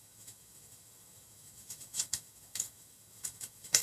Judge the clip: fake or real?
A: fake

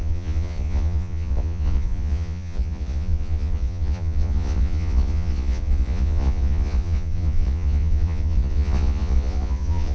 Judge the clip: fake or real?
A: fake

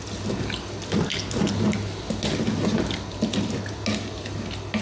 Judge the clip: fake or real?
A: real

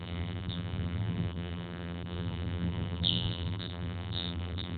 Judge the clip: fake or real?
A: fake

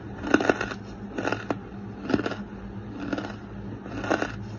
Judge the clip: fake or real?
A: real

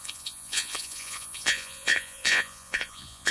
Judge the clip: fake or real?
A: fake